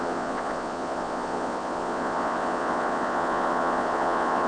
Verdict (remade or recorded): remade